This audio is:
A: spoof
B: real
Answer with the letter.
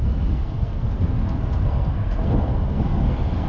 A